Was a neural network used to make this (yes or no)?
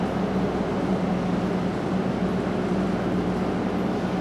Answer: no